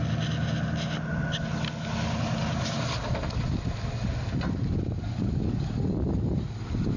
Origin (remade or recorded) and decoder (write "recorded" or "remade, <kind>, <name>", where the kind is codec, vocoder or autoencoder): recorded